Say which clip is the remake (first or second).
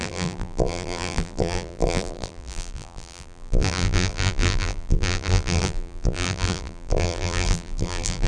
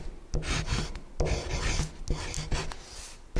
first